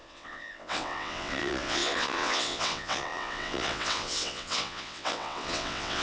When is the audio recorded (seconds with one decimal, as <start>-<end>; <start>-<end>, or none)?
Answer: none